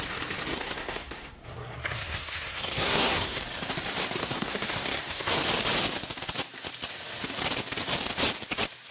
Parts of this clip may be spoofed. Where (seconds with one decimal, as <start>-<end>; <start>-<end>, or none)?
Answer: 0.5-3.4; 4.2-5.4